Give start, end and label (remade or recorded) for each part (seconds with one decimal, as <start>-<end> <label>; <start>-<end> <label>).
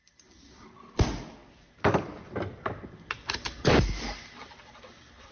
0.0-5.3 recorded